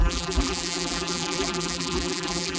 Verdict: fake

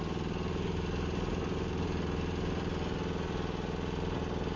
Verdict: real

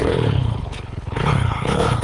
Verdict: fake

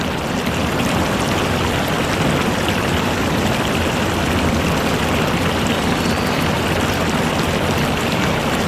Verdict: real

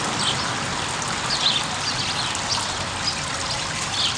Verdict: real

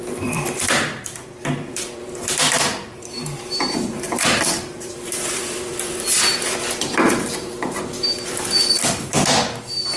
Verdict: fake